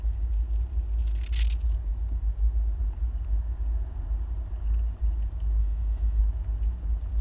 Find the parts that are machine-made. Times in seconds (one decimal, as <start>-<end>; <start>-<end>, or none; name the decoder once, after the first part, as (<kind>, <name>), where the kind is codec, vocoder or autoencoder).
5.6-6.2 (autoencoder, DAC-VAE)